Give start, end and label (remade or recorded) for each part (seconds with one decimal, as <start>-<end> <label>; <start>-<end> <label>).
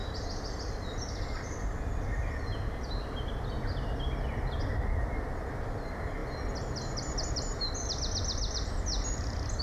0.0-0.7 remade; 0.7-9.6 recorded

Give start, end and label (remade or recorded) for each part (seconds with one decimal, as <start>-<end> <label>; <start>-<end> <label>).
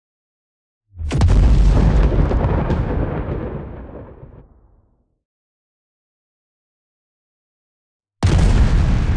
0.0-9.2 recorded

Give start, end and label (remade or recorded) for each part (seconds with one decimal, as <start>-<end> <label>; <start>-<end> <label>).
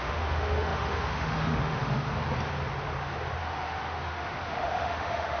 0.0-2.0 remade; 2.0-3.4 recorded; 3.4-5.4 remade